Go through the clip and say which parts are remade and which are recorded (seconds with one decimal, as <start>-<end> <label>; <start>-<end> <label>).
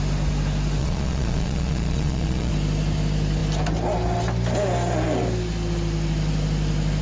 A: 0.0-0.8 recorded; 0.8-2.5 remade; 2.5-7.0 recorded